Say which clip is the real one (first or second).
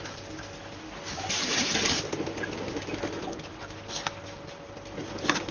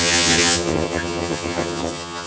first